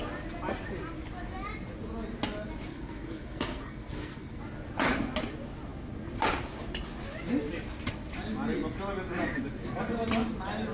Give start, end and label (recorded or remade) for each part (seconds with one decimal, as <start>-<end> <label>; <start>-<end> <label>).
0.0-2.7 recorded; 2.7-4.4 remade; 4.4-10.7 recorded